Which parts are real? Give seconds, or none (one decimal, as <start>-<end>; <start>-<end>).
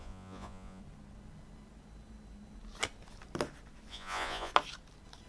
0.8-3.9; 4.5-5.3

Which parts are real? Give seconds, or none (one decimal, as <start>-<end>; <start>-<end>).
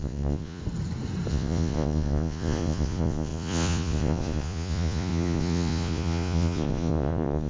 0.6-1.3